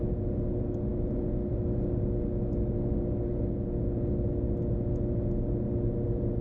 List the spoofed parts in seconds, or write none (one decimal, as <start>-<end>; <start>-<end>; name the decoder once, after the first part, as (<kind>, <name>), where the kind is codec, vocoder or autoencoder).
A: none